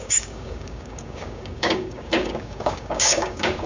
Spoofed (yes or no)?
yes